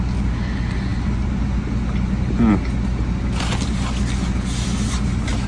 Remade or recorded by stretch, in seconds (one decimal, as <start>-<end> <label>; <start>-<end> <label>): 0.0-5.5 recorded